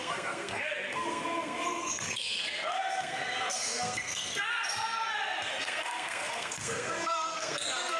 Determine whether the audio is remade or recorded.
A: remade